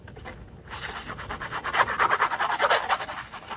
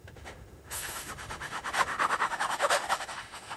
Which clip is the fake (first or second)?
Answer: second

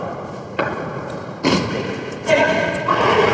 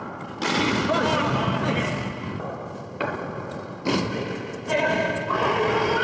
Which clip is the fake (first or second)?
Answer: first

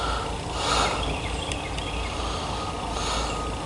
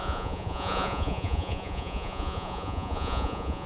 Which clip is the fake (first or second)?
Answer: second